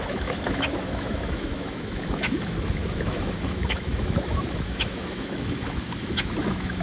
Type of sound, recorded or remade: remade